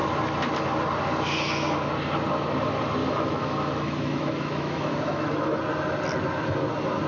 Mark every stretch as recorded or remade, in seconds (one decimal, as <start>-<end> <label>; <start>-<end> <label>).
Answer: 0.0-3.0 recorded; 3.0-5.6 remade; 5.6-7.1 recorded